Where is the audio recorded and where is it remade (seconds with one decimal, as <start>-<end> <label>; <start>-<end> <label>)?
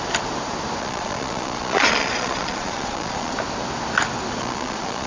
0.0-0.8 recorded; 0.8-3.3 remade; 3.3-4.4 recorded; 4.4-5.1 remade